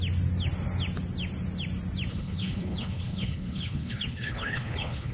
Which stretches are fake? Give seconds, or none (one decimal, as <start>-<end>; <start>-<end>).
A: 2.1-5.1